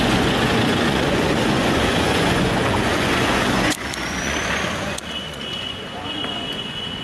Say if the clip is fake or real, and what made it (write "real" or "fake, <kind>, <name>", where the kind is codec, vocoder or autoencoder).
fake, vocoder, Vocos